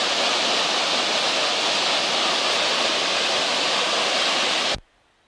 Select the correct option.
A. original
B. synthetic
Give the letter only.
A